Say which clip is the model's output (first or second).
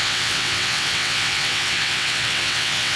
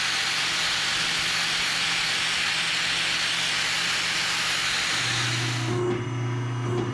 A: first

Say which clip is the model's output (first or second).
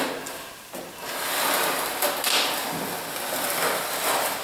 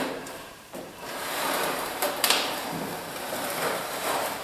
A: second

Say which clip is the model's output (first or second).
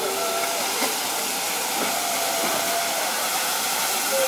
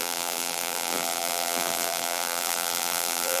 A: second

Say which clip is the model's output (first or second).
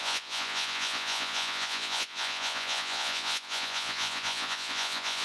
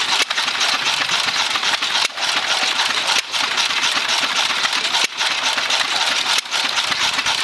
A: first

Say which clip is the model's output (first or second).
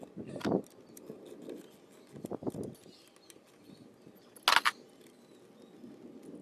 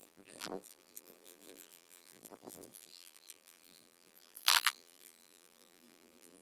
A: second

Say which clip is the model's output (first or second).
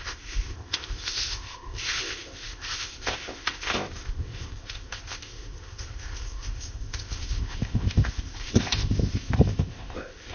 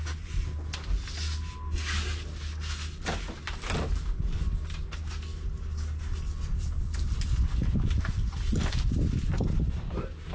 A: first